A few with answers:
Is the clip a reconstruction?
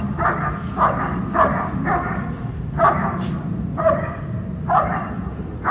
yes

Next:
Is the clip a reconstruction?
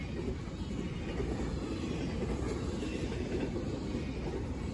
no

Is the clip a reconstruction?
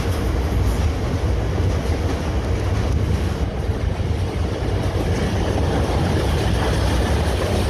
no